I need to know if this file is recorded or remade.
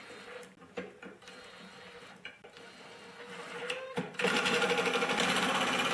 recorded